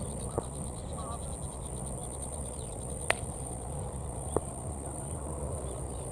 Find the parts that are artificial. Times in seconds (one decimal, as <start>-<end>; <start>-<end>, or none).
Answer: 0.0-0.8; 1.5-6.1